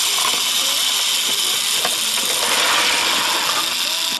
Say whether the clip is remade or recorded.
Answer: recorded